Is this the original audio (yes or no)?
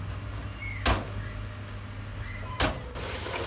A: yes